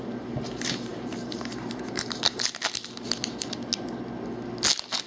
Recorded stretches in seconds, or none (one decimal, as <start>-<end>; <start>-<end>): 0.0-5.1